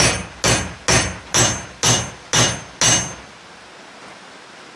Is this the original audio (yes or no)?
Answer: yes